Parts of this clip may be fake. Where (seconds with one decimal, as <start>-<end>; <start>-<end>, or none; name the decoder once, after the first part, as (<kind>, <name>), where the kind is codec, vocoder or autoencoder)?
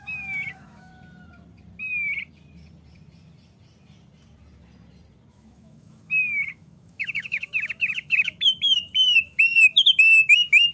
0.0-0.9 (autoencoder, DAC-VAE); 5.3-10.7